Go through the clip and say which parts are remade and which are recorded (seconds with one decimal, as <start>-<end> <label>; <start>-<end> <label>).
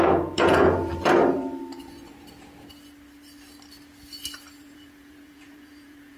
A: 0.0-0.9 remade; 0.9-4.6 recorded; 4.6-6.2 remade